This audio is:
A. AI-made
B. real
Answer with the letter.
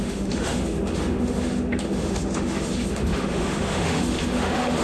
A